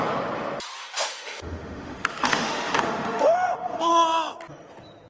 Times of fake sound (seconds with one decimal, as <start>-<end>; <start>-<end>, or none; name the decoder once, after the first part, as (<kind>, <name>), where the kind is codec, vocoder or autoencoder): 0.8-3.9 (autoencoder, DAC-VAE)